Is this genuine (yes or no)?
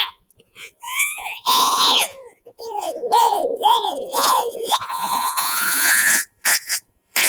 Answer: no